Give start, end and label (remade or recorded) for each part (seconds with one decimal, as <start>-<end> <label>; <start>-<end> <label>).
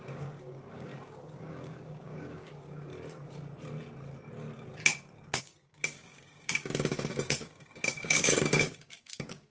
0.0-2.9 remade; 2.9-5.4 recorded; 5.4-9.5 remade